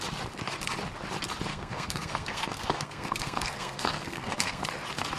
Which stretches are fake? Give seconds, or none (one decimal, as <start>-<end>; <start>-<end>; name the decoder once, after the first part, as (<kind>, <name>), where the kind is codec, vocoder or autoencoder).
1.5-4.6 (codec, SNAC)